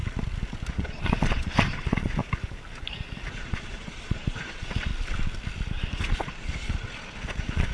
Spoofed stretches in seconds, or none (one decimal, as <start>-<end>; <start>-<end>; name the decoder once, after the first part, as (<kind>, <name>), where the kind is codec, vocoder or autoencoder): 0.7-2.2 (vocoder, Vocos); 3.3-4.9; 5.9-7.7